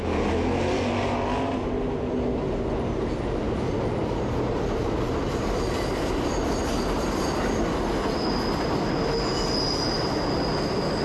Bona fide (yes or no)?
yes